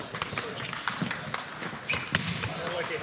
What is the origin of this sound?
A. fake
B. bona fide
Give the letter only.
B